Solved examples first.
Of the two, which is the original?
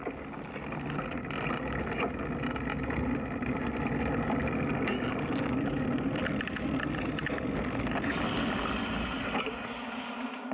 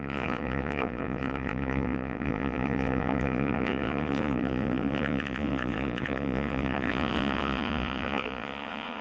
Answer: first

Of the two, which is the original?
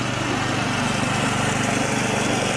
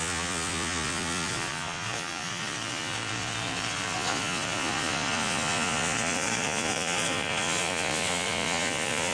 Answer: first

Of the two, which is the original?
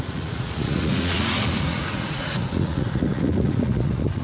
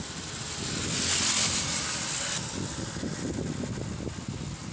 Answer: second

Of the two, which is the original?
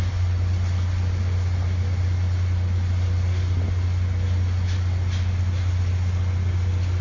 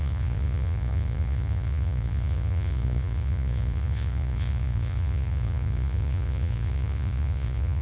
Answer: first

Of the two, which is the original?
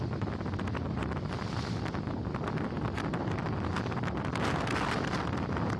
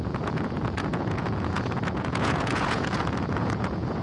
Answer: first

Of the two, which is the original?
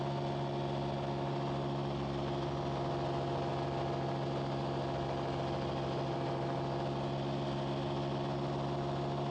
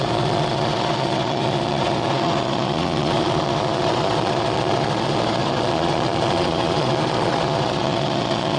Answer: first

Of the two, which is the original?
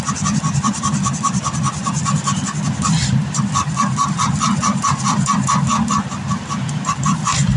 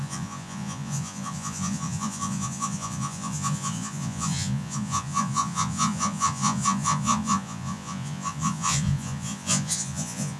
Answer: first